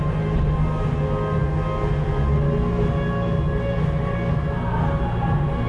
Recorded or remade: recorded